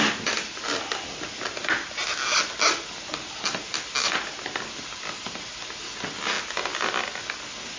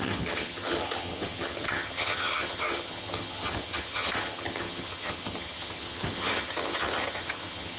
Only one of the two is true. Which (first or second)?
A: first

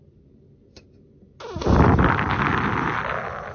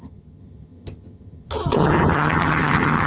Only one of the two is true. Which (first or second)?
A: first